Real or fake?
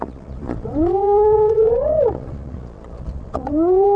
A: fake